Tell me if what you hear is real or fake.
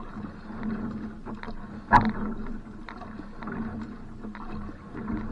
real